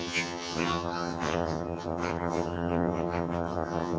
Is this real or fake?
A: fake